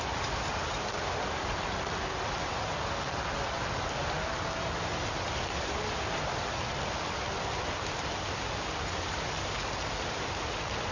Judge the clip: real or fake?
real